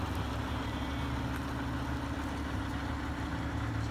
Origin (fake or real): real